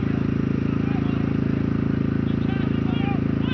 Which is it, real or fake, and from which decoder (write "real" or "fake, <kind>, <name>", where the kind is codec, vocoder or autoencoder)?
real